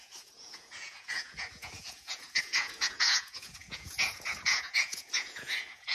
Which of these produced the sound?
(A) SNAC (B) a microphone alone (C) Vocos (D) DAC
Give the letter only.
C